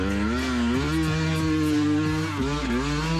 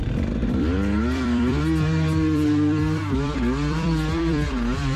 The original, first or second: first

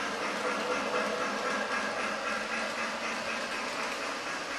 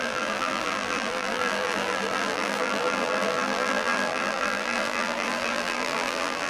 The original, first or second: first